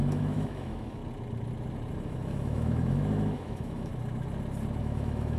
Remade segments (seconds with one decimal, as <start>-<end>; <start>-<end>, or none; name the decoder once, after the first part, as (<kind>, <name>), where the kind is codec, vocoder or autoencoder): 0.0-1.0 (autoencoder, DAC-VAE); 2.0-3.9; 4.8-5.4